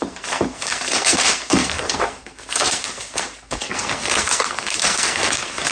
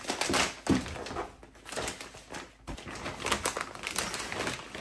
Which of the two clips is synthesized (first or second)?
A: first